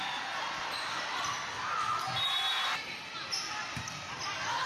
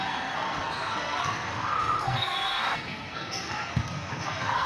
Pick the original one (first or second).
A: first